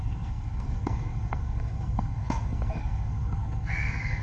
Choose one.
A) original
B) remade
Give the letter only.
B